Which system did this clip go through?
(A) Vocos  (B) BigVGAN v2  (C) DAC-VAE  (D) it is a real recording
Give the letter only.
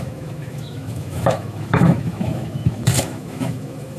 C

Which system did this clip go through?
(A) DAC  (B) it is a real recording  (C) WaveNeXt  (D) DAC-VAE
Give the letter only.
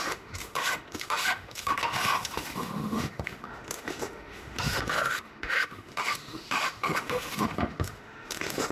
D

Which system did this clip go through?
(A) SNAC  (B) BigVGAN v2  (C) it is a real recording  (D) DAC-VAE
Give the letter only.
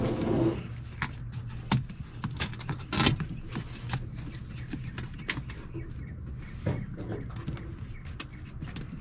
C